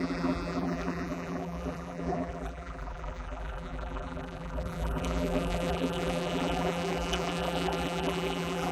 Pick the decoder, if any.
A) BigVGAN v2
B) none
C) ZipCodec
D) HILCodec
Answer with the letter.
A